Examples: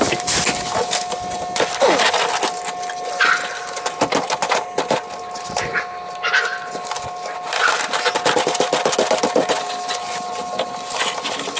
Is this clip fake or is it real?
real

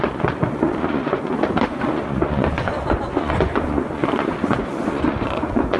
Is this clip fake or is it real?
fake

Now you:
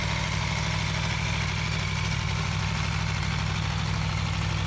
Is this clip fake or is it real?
real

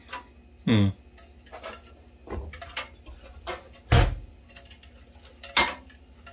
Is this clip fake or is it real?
real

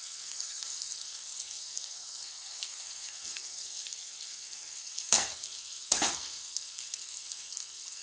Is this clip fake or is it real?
fake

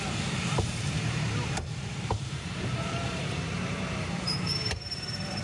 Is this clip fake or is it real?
fake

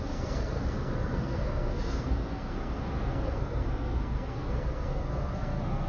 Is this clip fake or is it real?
fake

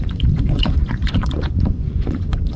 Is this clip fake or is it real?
fake